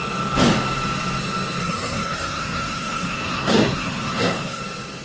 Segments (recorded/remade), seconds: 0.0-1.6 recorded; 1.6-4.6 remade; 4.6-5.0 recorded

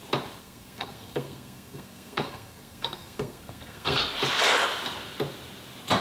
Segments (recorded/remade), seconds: 0.0-0.4 recorded; 0.4-4.0 remade; 4.0-6.0 recorded

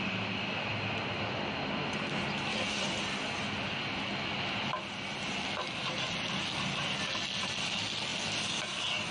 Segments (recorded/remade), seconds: 0.0-9.1 recorded

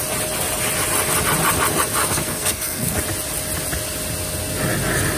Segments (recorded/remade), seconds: 0.0-2.0 recorded; 2.0-3.0 remade; 3.0-5.2 recorded

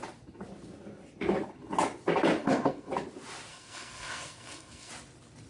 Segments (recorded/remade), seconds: 0.0-2.4 recorded; 2.4-2.9 remade; 2.9-3.5 recorded; 3.5-4.9 remade; 4.9-5.5 recorded

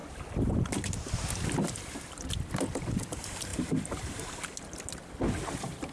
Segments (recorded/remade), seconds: 0.0-5.9 recorded